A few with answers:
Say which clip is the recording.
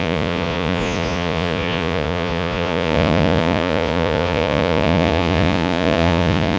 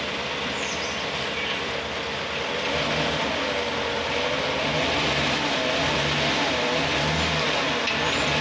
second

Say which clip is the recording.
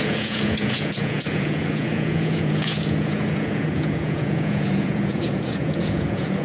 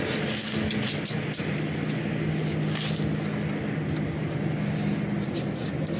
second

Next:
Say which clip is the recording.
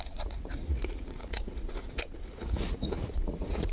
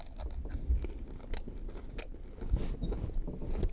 second